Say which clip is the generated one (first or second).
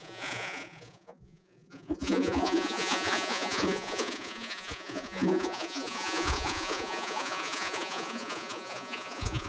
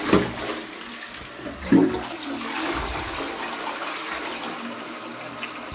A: first